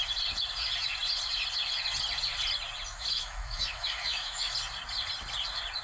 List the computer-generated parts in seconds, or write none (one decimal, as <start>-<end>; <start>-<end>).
2.9-4.5

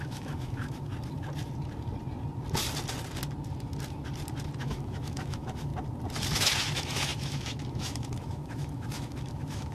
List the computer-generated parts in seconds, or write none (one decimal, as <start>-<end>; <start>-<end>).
0.0-0.9; 4.6-5.7; 6.4-9.7

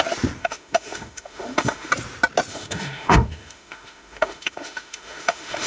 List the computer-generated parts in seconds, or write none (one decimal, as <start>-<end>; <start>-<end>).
0.4-1.9; 2.5-5.7

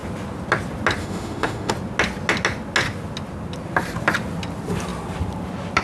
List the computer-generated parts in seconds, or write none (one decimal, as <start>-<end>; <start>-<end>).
1.0-1.7

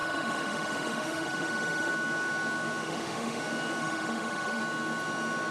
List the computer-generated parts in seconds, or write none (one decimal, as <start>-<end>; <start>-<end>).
0.0-1.9; 2.8-3.4; 3.8-4.6

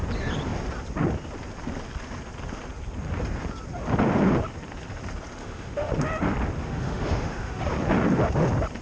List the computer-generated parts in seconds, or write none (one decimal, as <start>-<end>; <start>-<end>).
5.4-5.9; 6.6-7.6

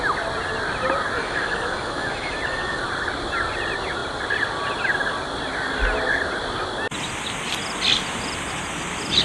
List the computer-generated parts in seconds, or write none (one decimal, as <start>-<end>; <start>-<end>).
1.2-2.8